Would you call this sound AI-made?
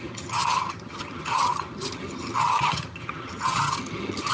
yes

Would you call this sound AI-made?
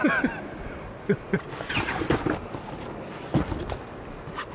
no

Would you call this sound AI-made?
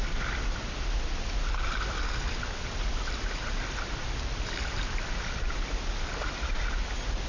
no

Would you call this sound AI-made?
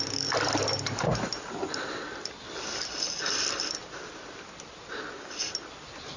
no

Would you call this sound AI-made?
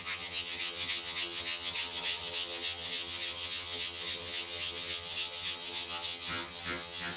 yes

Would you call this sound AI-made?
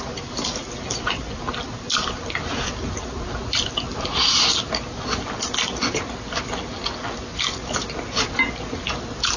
no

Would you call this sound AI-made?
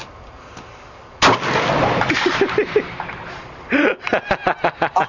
no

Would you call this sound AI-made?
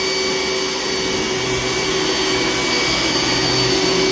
no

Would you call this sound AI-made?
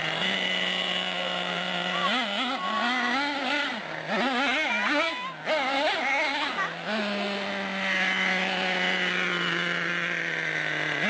no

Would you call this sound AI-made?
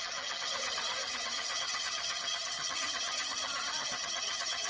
yes